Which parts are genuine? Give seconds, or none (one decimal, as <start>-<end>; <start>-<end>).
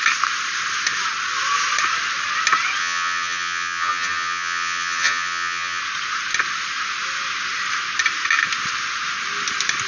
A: 0.0-2.8; 5.8-9.9